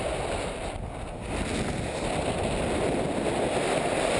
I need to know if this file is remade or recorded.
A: recorded